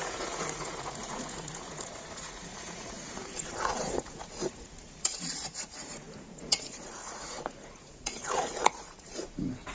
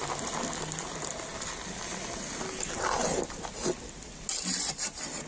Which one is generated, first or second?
first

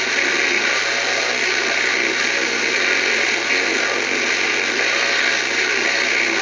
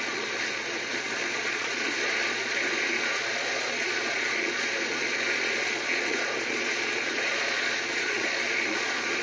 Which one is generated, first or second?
second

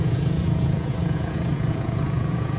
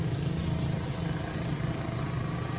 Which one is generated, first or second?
first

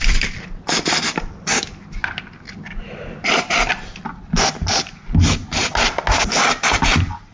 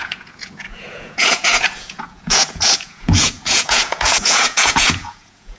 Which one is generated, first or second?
second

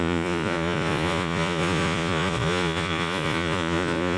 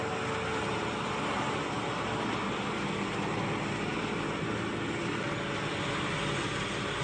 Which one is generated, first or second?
first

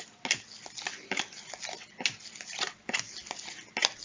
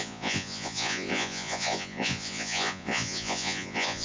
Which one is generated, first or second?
second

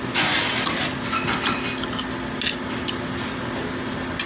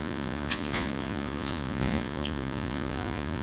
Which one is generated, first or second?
second